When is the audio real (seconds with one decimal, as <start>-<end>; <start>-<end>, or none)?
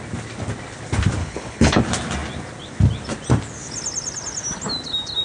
0.0-1.2; 1.8-5.2